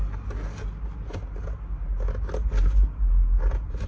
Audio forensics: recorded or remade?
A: recorded